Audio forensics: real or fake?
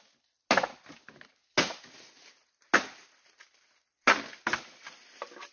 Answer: real